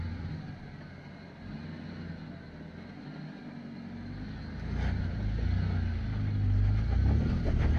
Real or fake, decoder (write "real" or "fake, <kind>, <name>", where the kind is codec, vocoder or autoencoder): real